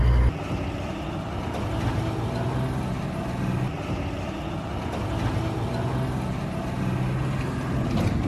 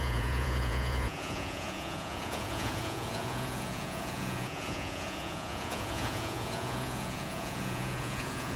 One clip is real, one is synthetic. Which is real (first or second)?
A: first